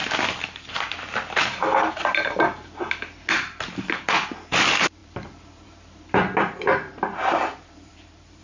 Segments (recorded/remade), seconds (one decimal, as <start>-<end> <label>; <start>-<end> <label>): 0.0-5.0 recorded; 5.0-8.4 remade